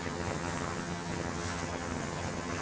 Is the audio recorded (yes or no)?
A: no